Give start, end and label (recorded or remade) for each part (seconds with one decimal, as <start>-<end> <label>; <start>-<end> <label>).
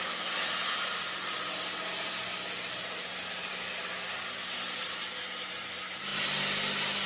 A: 0.0-7.1 recorded